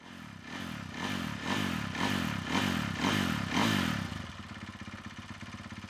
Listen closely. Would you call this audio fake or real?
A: real